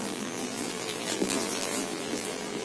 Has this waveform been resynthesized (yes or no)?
yes